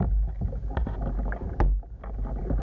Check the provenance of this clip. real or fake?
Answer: real